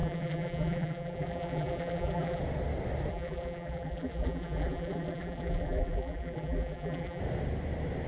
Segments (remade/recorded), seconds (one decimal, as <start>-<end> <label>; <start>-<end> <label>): 0.0-2.4 remade; 2.4-3.1 recorded; 3.1-7.2 remade; 7.2-8.1 recorded